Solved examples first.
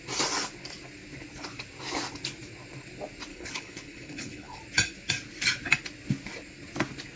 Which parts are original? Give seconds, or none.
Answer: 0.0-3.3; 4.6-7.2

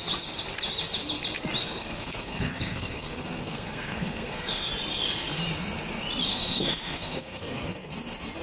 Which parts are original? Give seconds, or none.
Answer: 0.0-1.6; 4.7-6.3; 7.9-8.4

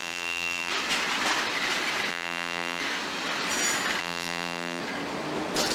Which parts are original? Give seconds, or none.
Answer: 0.7-2.1; 2.8-4.0; 4.8-5.7

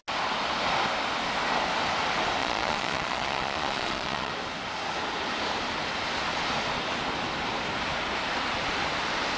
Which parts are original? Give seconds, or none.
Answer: 0.0-2.4; 4.3-9.4

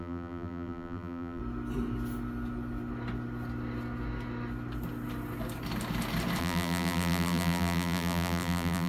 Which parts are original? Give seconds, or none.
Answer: 1.4-6.4

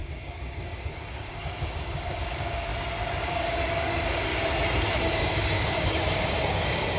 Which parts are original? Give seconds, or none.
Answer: 2.7-3.2; 4.3-5.0

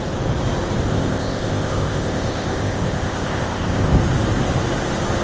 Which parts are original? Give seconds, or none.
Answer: 0.0-0.9; 4.0-5.2

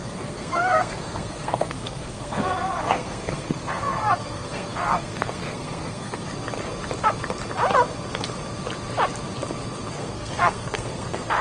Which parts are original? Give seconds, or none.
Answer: 6.3-9.9